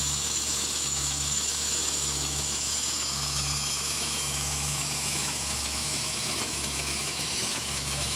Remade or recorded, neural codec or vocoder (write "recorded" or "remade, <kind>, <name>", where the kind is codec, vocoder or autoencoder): remade, autoencoder, DAC-VAE